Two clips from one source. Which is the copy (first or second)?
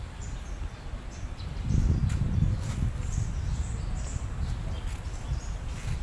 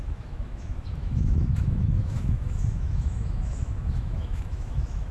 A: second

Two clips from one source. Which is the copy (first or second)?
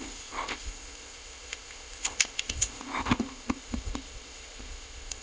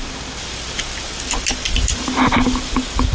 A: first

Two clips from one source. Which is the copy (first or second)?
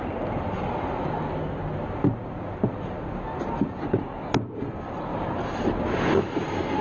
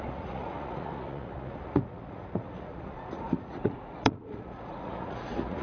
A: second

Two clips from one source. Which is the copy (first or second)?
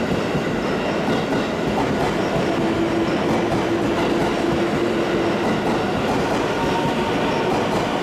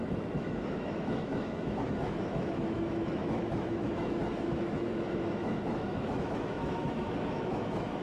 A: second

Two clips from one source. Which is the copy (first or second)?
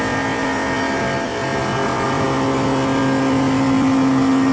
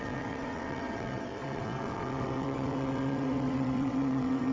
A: second